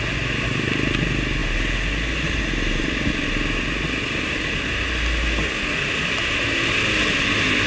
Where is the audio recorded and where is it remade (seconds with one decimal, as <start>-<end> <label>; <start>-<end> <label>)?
0.0-7.7 recorded